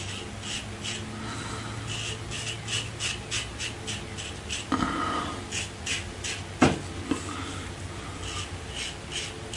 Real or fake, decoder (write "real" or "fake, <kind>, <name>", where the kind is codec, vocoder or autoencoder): real